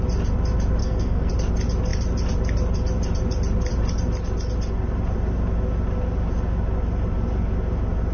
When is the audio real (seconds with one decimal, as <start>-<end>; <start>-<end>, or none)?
0.0-0.8; 1.3-8.1